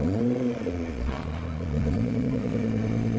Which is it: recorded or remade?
remade